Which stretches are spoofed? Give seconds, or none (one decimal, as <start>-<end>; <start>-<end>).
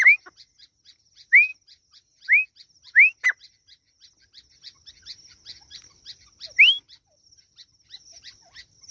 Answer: none